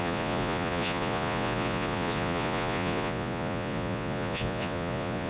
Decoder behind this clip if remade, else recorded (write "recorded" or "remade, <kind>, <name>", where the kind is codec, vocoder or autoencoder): remade, vocoder, Vocos